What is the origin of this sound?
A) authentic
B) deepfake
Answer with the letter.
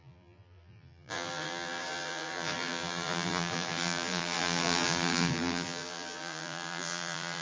B